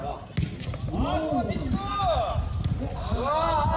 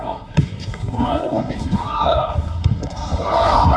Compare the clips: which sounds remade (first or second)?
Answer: second